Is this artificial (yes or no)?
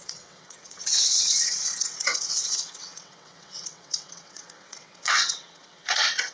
yes